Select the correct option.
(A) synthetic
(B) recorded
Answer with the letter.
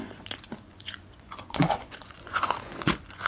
A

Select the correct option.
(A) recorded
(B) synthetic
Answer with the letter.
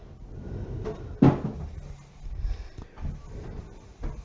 A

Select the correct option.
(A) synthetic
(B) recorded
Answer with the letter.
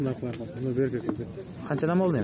B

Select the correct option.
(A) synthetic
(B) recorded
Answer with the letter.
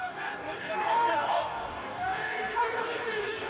A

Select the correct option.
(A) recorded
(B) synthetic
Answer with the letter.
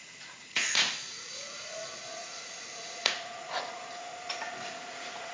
B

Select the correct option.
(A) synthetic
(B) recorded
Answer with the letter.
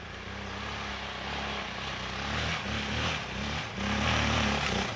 B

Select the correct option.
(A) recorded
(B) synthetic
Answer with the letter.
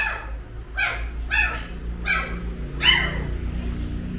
A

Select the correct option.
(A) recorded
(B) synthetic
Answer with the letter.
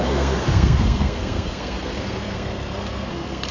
B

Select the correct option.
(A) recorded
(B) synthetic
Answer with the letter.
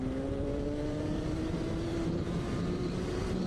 B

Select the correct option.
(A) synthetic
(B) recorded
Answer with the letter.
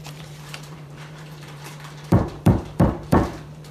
A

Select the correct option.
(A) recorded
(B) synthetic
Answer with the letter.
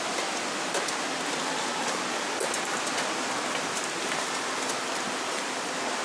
A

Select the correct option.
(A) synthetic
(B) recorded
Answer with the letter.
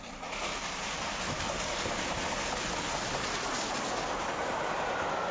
B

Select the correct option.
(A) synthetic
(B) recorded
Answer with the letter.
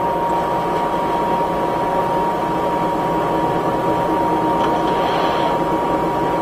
B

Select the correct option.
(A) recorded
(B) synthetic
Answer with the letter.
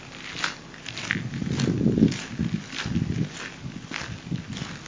A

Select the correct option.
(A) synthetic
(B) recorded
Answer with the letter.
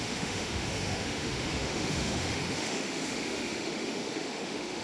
A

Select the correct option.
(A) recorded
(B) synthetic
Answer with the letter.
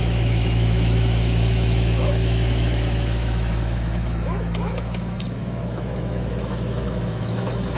B